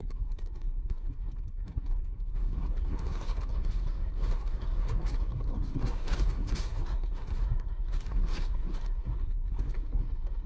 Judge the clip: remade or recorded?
remade